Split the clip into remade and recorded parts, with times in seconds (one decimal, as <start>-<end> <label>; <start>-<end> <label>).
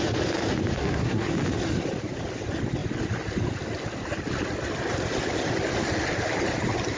0.0-0.8 recorded; 0.8-1.3 remade; 1.3-7.0 recorded